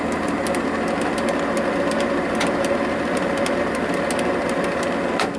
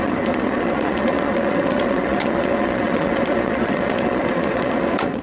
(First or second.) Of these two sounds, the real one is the first